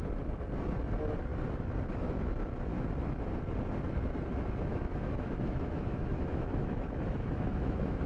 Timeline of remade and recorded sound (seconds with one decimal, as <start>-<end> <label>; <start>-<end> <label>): 0.0-4.7 recorded; 4.7-8.1 remade